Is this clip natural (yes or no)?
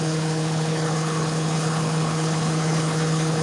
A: no